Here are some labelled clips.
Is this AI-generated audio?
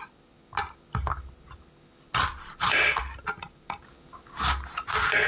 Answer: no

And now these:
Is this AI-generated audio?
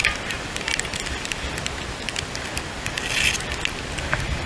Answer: no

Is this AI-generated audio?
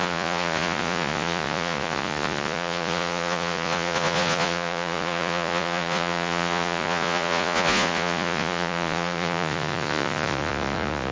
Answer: yes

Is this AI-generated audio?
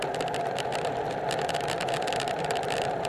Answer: no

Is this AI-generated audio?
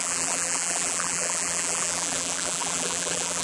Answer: yes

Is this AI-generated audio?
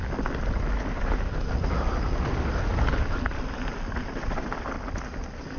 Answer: no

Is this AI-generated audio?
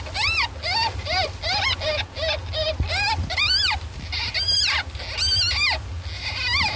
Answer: no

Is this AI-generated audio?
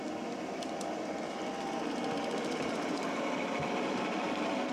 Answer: no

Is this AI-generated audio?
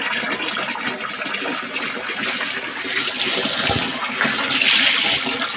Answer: no